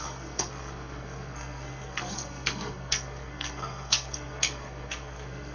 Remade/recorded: remade